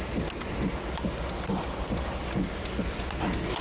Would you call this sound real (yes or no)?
yes